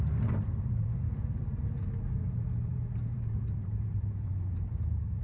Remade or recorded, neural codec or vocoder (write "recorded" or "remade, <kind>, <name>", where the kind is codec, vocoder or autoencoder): remade, vocoder, BigVGAN v2